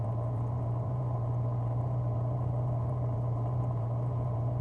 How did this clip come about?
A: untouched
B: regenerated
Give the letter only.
B